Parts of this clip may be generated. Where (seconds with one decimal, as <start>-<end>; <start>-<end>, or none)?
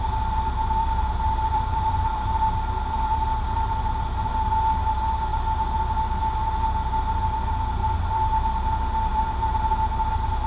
0.8-4.3; 7.8-8.4; 9.1-9.7